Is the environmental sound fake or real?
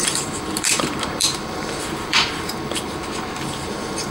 fake